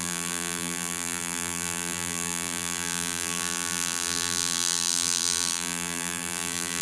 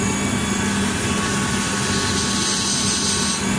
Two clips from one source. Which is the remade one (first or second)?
first